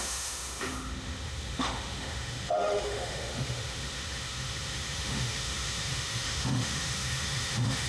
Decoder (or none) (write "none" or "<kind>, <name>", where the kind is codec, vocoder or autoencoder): autoencoder, DAC-VAE